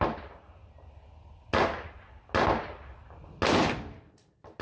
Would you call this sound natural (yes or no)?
yes